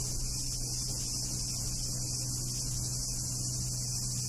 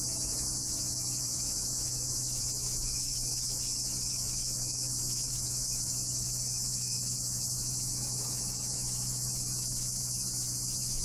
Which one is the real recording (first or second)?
first